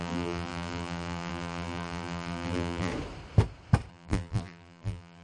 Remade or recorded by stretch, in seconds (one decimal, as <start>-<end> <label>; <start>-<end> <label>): 0.0-2.9 remade; 2.9-3.9 recorded; 3.9-5.2 remade